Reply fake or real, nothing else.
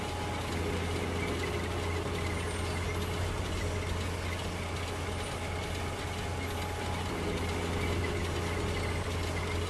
real